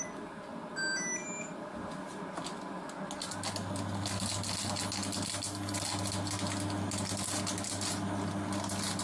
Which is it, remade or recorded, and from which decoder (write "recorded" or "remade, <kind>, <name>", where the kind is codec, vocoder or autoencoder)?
recorded